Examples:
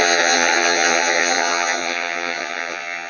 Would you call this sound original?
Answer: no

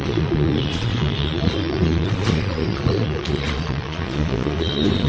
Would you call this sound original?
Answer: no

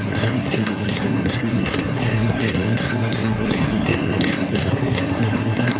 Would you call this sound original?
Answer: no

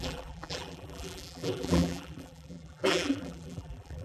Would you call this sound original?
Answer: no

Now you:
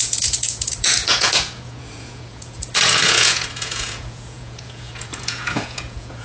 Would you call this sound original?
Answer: no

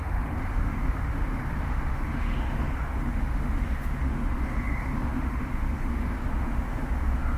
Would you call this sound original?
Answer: no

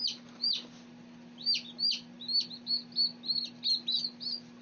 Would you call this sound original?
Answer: yes